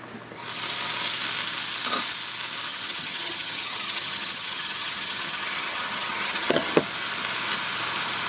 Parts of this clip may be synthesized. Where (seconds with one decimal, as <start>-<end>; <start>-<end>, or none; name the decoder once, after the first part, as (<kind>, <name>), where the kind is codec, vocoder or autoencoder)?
2.7-6.8 (vocoder, HiFi-GAN)